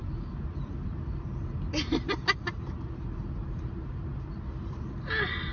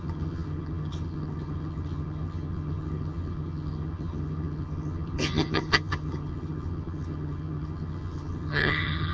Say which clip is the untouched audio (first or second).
first